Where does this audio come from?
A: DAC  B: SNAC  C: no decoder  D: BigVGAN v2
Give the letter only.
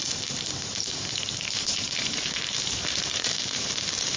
D